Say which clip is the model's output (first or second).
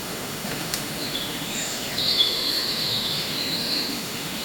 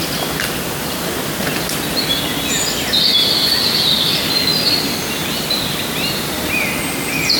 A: first